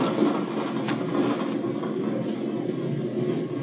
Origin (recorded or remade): recorded